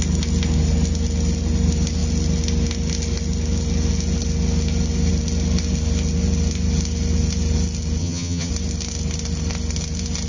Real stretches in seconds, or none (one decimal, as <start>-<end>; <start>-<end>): 0.0-8.0; 8.5-10.3